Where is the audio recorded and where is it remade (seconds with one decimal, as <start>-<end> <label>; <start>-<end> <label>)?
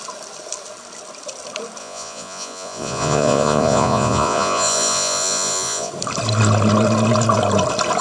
0.0-1.8 recorded; 1.8-5.9 remade; 5.9-8.0 recorded